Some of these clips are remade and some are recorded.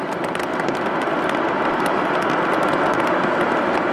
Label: recorded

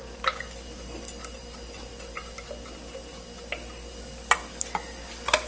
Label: recorded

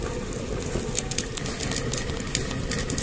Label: recorded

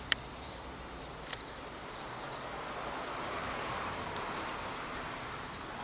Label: remade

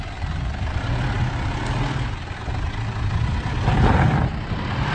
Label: recorded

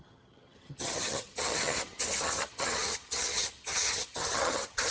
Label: remade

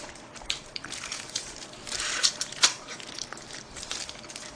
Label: remade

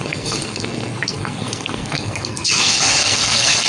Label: remade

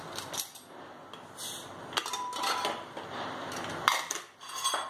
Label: recorded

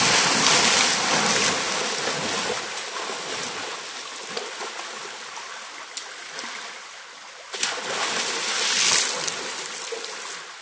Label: recorded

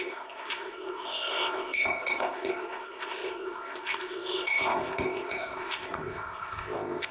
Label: remade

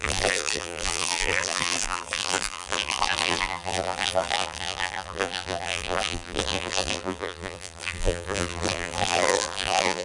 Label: remade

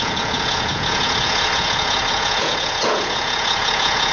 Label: remade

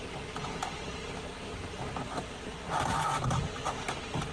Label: remade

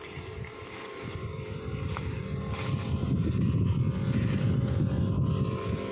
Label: remade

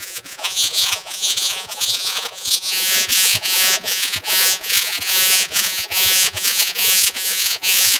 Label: remade